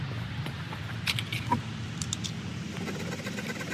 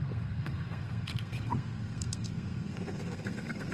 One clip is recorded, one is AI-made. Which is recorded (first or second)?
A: first